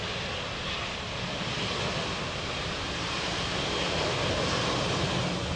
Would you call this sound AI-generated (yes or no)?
no